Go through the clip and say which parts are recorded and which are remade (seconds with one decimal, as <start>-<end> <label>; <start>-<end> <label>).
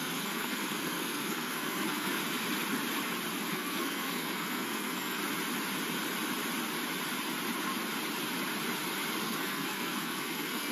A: 0.0-2.2 remade; 2.2-3.5 recorded; 3.5-5.2 remade; 5.2-9.2 recorded; 9.2-10.7 remade